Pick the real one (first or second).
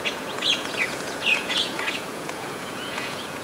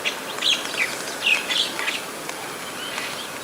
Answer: second